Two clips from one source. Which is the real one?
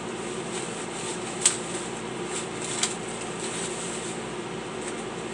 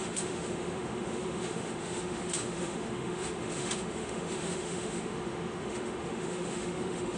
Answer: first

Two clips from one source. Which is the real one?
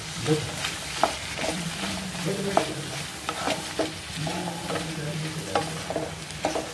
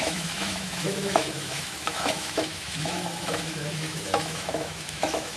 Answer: first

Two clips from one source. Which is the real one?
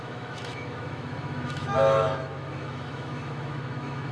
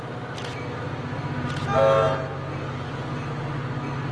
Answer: second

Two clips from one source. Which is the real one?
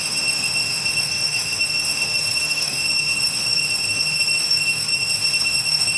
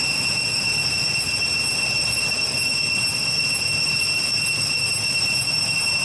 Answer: second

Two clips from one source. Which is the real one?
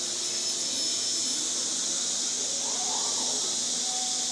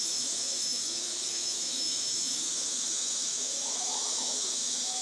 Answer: first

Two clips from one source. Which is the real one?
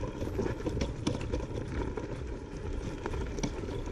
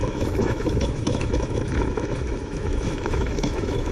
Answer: first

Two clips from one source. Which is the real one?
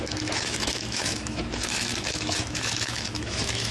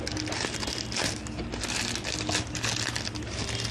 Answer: second